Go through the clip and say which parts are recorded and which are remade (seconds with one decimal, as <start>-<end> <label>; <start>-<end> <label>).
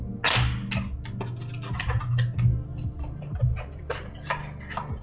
0.0-2.7 recorded; 2.7-4.3 remade; 4.3-5.0 recorded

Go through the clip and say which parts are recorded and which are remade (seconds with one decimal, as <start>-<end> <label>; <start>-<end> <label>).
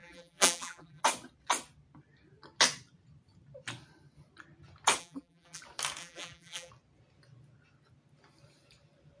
0.0-1.0 remade; 1.0-5.0 recorded; 5.0-5.6 remade; 5.6-6.0 recorded; 6.0-6.7 remade; 6.7-9.2 recorded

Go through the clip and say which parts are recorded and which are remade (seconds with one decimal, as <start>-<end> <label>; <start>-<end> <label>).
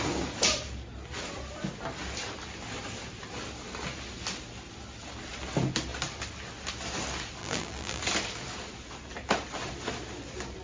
0.0-7.4 recorded; 7.4-8.0 remade; 8.0-10.6 recorded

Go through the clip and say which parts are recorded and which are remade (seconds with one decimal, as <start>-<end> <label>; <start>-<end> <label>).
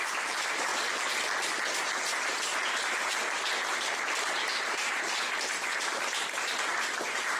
0.0-0.7 remade; 0.7-4.6 recorded; 4.6-7.4 remade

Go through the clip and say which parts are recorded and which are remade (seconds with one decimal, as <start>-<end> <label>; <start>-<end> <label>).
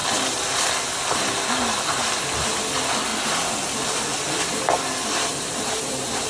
0.0-5.3 recorded; 5.3-6.3 remade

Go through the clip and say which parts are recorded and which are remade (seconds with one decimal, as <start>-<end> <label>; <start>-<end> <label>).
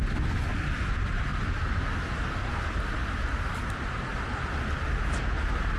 0.0-5.8 recorded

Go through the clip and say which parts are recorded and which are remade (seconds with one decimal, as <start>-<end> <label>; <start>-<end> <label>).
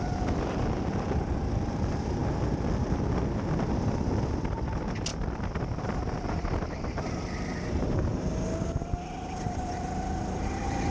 0.0-5.1 recorded; 5.1-7.0 remade; 7.0-10.9 recorded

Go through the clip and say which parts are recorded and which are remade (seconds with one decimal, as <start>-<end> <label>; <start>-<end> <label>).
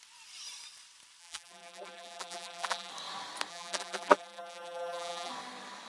0.0-1.2 recorded; 1.2-2.9 remade; 2.9-3.5 recorded; 3.5-5.3 remade; 5.3-5.9 recorded